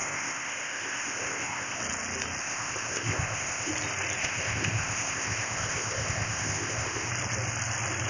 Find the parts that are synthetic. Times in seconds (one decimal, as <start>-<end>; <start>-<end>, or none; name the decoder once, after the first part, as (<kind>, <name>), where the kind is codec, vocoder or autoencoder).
0.0-1.8 (codec, ZipCodec); 2.4-3.7; 4.2-7.1